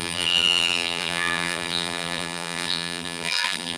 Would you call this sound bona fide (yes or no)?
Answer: no